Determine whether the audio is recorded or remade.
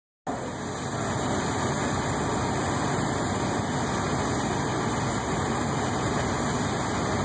recorded